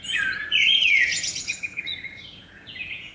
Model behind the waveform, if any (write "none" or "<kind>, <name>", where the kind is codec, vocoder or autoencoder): vocoder, Vocos